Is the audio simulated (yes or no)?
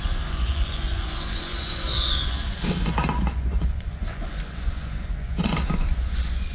yes